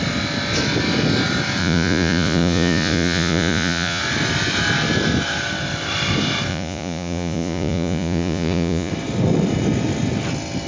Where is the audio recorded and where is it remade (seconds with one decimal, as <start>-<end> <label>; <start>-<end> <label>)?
0.0-1.6 recorded; 1.6-4.0 remade; 4.0-6.5 recorded; 6.5-8.9 remade; 8.9-10.7 recorded